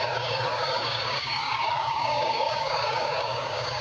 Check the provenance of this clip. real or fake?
fake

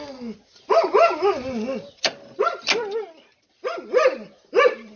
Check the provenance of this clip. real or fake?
real